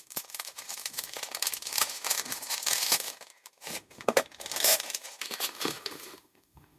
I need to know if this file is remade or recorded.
remade